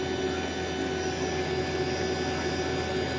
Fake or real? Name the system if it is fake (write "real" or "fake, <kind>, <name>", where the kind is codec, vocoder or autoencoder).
real